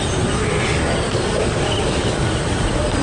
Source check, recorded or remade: recorded